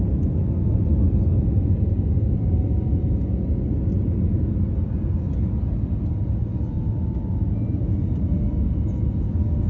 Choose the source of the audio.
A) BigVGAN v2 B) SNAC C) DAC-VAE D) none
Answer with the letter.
D